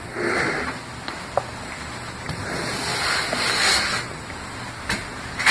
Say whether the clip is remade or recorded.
recorded